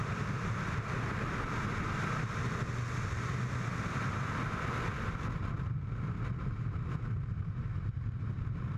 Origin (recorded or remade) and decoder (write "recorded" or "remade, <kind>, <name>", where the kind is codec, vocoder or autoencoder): recorded